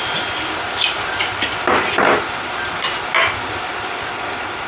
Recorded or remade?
recorded